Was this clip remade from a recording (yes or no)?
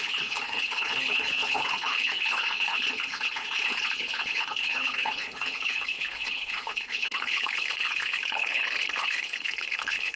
yes